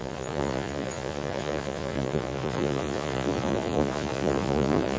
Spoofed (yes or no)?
yes